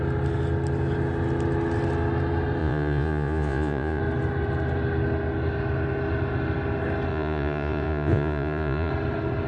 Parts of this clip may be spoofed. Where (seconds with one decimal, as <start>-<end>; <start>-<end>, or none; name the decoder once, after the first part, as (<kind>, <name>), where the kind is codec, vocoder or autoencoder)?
2.6-4.0 (vocoder, Vocos); 7.1-8.9